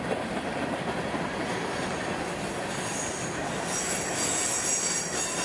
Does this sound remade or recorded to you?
recorded